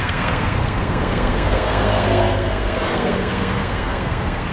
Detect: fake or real fake